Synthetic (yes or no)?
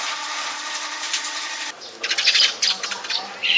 no